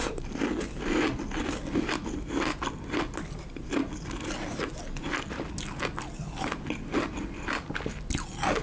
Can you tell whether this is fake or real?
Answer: real